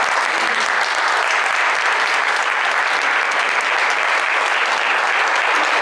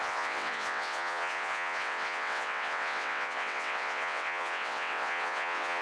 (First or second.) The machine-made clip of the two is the second